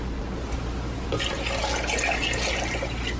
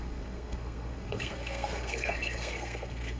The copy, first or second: second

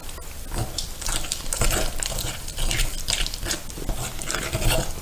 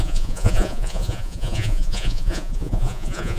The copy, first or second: second